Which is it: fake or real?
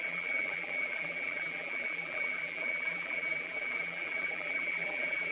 fake